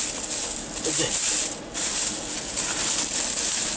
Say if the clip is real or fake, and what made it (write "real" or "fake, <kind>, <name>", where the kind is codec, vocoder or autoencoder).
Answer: real